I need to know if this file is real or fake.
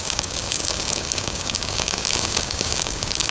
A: fake